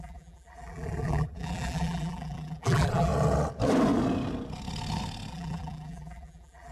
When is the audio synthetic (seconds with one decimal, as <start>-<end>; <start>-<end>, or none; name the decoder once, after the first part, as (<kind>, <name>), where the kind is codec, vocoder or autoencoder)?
0.0-3.1 (vocoder, BigVGAN v2); 5.3-6.7